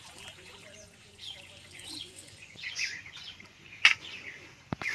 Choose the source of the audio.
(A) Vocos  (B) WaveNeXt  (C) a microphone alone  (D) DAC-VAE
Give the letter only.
A